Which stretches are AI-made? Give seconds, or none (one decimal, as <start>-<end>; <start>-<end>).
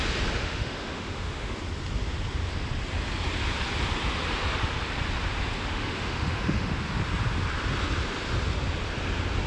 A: 0.4-1.6; 5.7-6.8